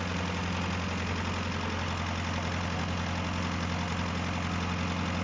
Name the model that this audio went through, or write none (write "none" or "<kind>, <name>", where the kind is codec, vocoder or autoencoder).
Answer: none